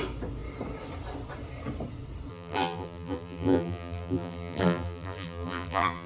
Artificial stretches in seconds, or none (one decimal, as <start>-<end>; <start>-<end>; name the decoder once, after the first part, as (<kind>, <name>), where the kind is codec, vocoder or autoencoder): 2.3-6.1 (vocoder, BigVGAN v2)